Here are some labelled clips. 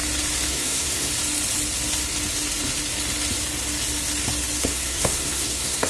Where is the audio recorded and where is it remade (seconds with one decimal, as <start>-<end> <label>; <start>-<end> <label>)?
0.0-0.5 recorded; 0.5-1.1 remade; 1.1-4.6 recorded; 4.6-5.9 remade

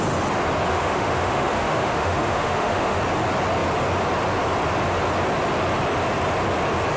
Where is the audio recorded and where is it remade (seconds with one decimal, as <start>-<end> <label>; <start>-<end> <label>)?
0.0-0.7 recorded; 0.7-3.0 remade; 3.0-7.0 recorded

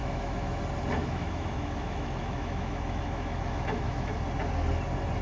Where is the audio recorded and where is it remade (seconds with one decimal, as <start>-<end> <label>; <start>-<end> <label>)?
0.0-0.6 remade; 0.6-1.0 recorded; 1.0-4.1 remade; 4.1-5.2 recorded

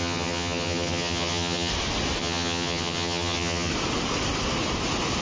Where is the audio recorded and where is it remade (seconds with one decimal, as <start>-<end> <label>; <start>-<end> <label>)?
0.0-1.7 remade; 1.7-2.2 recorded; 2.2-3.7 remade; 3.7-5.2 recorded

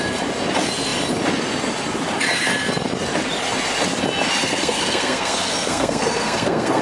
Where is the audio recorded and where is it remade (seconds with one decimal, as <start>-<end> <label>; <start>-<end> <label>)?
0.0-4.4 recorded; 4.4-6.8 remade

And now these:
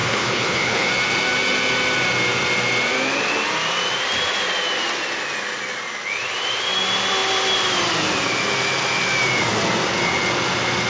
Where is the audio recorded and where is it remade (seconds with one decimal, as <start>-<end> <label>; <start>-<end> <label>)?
0.0-0.9 remade; 0.9-10.9 recorded